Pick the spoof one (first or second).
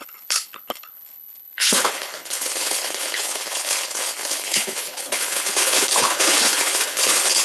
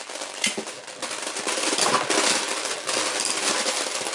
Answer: first